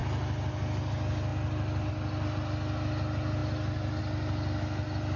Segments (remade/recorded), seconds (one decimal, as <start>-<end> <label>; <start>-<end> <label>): 0.0-5.2 recorded